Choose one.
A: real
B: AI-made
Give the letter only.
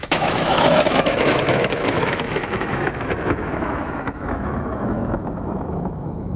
B